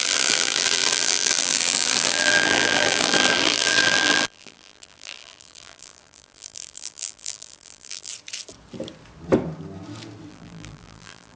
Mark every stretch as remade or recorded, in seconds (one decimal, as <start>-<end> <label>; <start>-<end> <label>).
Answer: 0.0-8.1 remade; 8.1-10.3 recorded; 10.3-11.4 remade